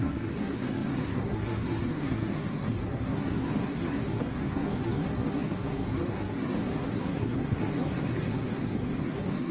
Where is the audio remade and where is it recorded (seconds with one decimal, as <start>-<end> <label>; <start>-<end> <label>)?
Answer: 0.0-9.5 remade